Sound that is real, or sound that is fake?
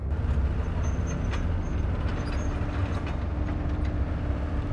real